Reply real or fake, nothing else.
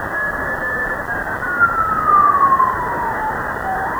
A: real